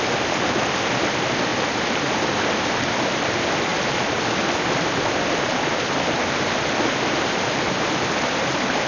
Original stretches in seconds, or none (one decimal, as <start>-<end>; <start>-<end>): 0.0-8.9